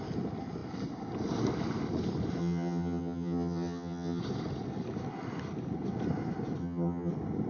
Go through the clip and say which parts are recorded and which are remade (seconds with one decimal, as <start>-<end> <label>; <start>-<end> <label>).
0.0-2.4 recorded; 2.4-4.2 remade; 4.2-6.6 recorded; 6.6-7.1 remade; 7.1-7.5 recorded